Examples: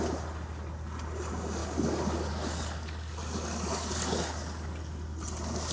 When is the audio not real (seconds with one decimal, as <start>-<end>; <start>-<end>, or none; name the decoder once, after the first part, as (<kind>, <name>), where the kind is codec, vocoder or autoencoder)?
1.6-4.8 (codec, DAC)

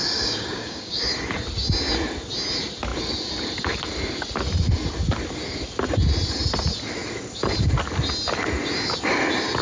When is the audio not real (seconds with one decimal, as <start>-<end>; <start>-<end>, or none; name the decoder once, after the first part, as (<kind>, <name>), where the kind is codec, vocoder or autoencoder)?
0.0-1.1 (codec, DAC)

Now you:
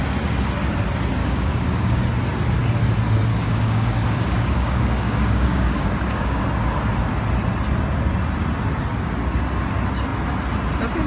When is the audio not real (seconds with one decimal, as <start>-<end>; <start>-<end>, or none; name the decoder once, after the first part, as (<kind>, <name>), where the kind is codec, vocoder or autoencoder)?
1.2-2.0 (codec, DAC); 3.3-6.4

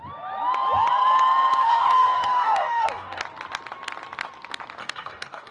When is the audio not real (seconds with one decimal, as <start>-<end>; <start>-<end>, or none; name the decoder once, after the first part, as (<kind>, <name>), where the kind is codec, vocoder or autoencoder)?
1.6-3.2 (codec, DAC); 4.8-5.5

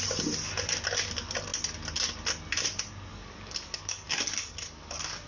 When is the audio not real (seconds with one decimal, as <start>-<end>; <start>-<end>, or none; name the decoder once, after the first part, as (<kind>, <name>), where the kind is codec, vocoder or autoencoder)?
3.1-5.3 (codec, DAC)